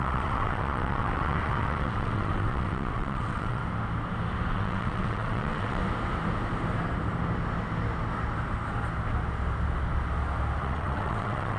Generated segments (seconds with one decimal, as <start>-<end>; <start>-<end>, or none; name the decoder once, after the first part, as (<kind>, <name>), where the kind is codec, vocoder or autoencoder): 0.0-3.6 (vocoder, WaveNeXt); 4.5-5.8; 10.6-11.6